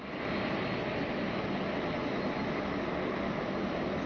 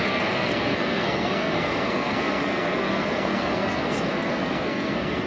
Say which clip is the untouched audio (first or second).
first